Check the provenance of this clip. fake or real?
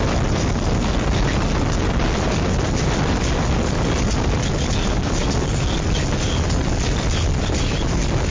real